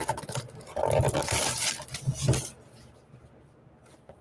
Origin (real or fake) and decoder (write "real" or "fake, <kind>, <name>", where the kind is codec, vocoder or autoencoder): real